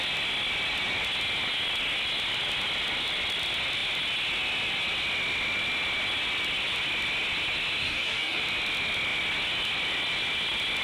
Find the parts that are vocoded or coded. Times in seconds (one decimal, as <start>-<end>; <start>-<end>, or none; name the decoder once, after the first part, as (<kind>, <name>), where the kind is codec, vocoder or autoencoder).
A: 7.8-8.4 (codec, DAC)